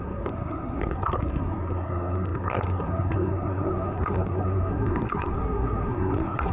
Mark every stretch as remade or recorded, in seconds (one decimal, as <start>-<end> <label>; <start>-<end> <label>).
0.0-6.5 remade